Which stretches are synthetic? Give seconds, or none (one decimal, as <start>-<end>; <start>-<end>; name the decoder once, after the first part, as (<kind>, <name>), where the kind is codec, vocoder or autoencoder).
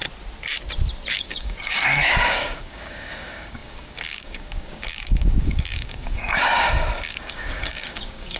1.1-8.4 (codec, DAC)